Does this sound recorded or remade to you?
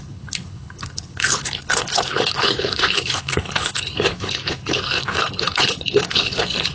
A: remade